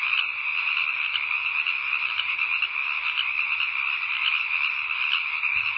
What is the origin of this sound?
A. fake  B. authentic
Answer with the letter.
B